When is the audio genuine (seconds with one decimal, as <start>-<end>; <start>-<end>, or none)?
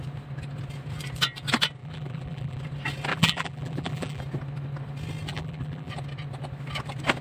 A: 0.0-1.8; 2.6-3.1; 4.2-5.3; 5.9-7.2